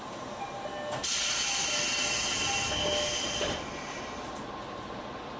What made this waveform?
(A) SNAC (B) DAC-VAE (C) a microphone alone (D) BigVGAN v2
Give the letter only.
C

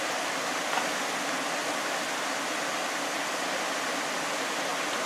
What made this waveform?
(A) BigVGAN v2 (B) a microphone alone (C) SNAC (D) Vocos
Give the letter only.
B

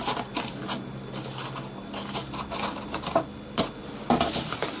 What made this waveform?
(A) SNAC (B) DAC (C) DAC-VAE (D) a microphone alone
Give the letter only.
D